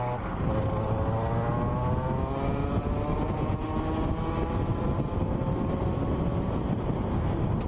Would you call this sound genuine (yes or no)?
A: yes